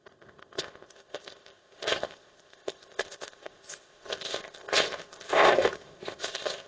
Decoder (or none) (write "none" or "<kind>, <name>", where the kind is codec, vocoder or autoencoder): codec, ZipCodec